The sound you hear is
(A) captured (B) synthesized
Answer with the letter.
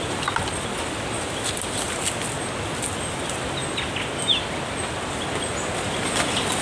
A